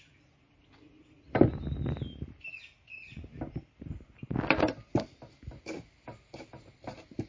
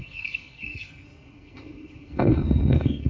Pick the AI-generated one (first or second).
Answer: second